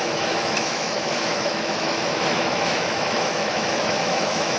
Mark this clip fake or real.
fake